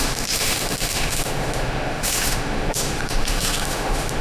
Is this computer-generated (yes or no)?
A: yes